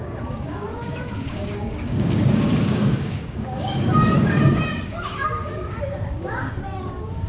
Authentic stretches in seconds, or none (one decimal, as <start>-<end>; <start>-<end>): none